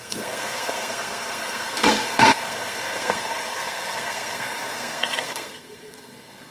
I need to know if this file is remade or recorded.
remade